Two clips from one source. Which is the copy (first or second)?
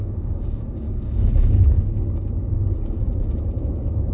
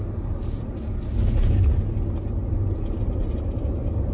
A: first